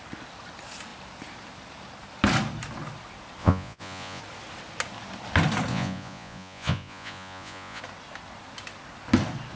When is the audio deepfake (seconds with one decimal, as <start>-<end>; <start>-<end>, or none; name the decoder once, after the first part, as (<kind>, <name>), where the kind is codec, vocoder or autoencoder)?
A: 3.4-4.2 (vocoder, Vocos); 5.7-7.8